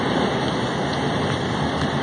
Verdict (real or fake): real